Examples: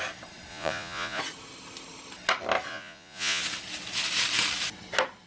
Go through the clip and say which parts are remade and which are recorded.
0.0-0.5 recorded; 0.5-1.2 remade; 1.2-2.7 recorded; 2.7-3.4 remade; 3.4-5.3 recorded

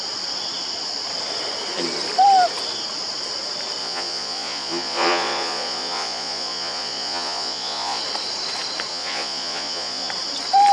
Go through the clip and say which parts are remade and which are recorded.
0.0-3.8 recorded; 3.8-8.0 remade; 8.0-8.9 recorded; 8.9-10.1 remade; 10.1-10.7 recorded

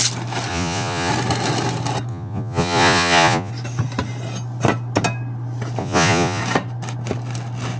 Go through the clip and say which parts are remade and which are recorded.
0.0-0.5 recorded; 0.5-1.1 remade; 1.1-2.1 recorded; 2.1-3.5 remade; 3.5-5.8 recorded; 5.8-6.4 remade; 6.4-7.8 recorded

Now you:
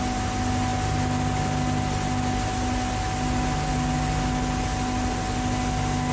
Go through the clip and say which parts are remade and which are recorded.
0.0-6.1 recorded

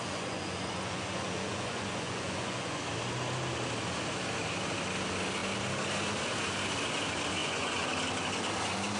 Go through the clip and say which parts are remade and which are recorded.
0.0-2.8 remade; 2.8-7.4 recorded; 7.4-7.9 remade; 7.9-9.0 recorded

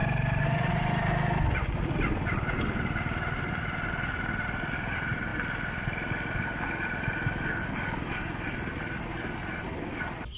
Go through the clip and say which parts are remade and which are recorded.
0.0-10.4 recorded